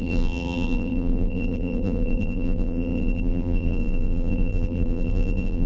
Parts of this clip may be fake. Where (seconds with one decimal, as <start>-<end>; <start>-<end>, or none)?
0.0-5.7